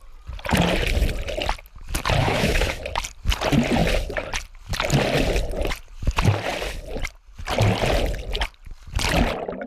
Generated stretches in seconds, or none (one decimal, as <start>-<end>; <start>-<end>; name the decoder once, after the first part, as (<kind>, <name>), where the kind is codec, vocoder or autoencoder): 2.2-2.8 (autoencoder, DAC-VAE)